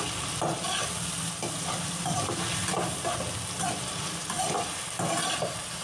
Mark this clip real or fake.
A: real